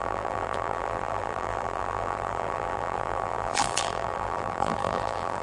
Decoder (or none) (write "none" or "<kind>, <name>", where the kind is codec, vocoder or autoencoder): vocoder, BigVGAN v2